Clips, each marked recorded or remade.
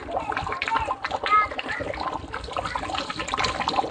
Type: recorded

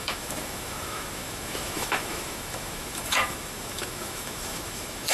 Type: remade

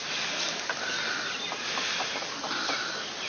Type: recorded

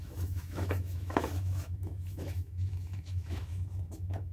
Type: remade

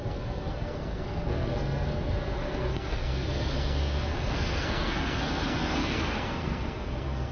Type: remade